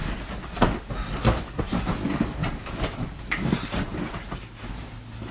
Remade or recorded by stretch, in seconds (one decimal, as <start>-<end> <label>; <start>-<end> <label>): 0.0-2.4 recorded; 2.4-4.1 remade; 4.1-5.3 recorded